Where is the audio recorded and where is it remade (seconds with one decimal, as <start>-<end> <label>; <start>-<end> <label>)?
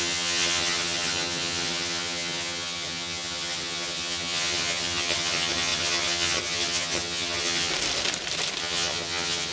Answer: 0.0-7.7 remade; 7.7-8.6 recorded; 8.6-9.5 remade